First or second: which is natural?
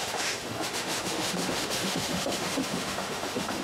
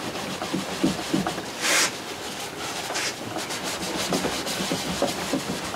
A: second